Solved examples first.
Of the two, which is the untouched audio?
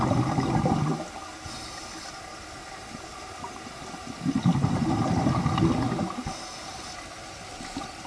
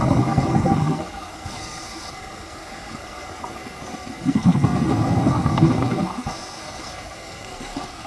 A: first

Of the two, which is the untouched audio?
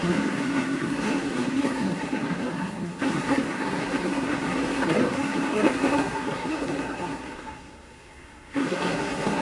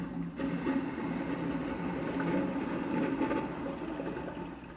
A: second